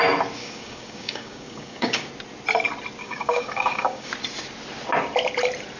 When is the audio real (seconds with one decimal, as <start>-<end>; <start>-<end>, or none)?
0.0-0.4; 2.1-3.0; 4.1-5.8